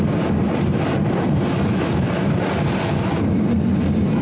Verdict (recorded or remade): recorded